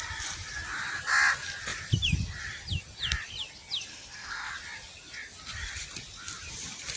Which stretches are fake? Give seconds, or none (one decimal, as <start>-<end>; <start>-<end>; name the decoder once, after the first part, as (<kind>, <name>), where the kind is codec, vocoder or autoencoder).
3.9-4.5 (codec, SNAC)